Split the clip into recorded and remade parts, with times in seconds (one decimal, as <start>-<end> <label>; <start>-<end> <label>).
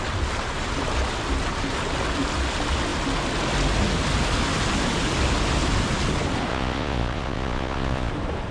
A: 0.0-6.5 recorded; 6.5-8.1 remade; 8.1-8.5 recorded